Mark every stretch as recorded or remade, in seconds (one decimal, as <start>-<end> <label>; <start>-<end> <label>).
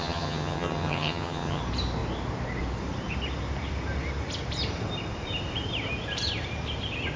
0.0-1.6 remade; 1.6-7.2 recorded